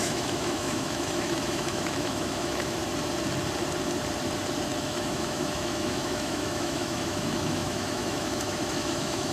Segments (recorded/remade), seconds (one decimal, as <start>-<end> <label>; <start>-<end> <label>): 0.0-2.8 remade; 2.8-4.8 recorded; 4.8-9.3 remade